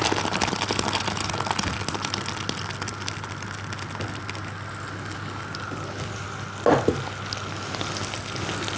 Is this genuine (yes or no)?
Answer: yes